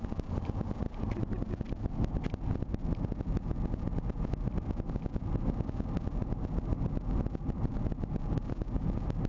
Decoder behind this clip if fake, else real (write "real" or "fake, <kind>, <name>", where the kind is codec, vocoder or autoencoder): real